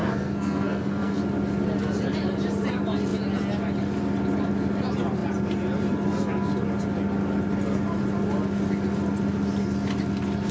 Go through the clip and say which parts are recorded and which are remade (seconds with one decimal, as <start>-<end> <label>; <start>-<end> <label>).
0.0-1.2 remade; 1.2-10.5 recorded